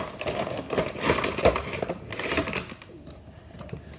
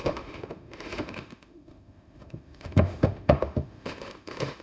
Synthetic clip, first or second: second